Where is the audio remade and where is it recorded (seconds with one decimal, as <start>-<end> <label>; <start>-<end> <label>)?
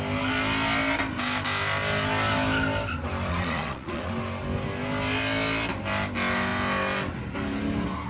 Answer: 0.0-3.3 recorded; 3.3-4.1 remade; 4.1-8.1 recorded